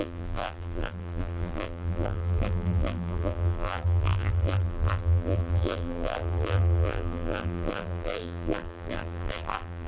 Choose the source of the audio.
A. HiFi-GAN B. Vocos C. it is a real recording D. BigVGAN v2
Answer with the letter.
D